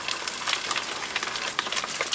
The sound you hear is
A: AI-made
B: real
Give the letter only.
B